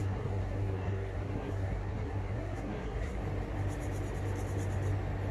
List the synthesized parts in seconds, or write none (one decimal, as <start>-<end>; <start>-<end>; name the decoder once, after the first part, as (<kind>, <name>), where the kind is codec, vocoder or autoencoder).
0.0-3.2 (codec, SNAC)